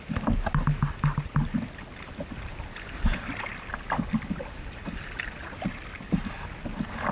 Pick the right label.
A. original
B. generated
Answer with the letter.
A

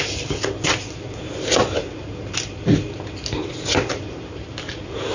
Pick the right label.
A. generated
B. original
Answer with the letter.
B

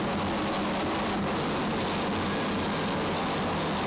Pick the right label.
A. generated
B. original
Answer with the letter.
B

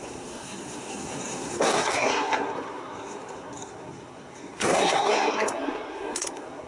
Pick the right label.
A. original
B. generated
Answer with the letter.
B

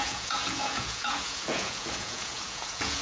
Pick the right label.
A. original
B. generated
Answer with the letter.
B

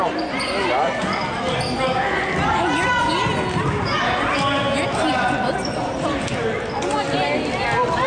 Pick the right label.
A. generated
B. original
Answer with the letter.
B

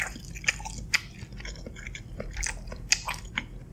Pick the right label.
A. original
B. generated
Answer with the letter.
A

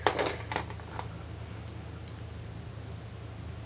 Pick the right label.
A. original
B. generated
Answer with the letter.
A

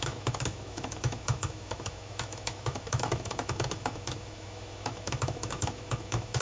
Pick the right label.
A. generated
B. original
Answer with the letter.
A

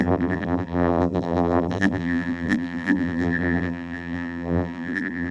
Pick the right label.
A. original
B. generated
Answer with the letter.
B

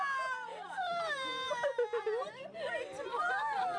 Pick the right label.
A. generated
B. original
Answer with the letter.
B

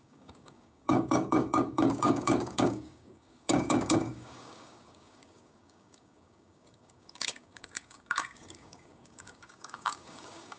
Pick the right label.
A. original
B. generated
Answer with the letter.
B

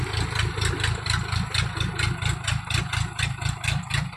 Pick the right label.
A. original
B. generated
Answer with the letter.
A